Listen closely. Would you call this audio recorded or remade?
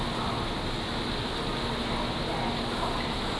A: recorded